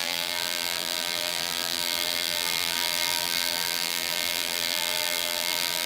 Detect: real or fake fake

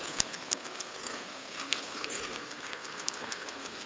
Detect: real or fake fake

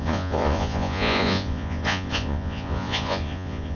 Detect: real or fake fake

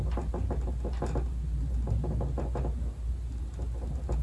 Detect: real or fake real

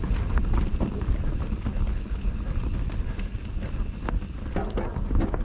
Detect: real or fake real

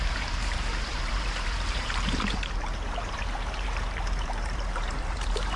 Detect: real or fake fake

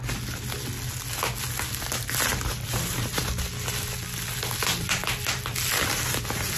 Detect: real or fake real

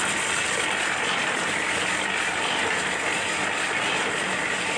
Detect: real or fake real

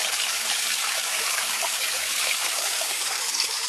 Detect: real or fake fake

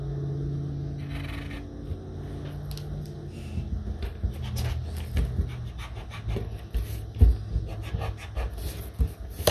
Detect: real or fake real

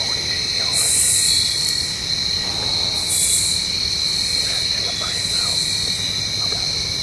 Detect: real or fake real